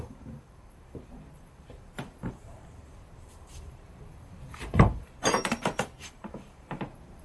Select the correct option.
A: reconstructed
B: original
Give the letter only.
A